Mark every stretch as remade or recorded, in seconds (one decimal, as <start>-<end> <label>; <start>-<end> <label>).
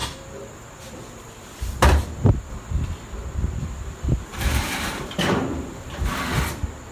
0.0-2.7 remade; 2.7-3.6 recorded; 3.6-6.1 remade; 6.1-6.9 recorded